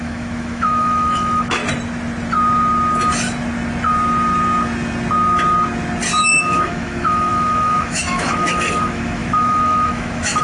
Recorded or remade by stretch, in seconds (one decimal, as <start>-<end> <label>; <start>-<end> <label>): 0.0-1.6 remade; 1.6-6.2 recorded; 6.2-10.4 remade